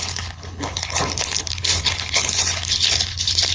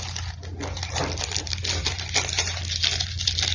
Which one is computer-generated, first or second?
first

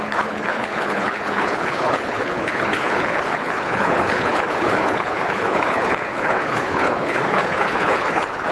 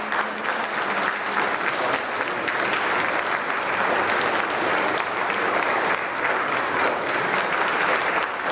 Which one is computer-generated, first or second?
first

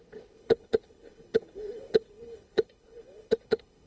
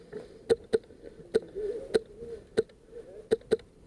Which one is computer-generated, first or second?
first